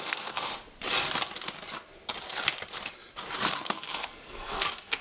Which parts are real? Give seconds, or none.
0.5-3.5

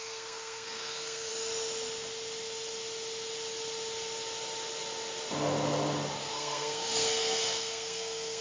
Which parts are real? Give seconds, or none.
1.3-6.2